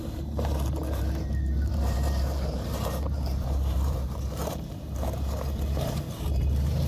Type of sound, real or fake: fake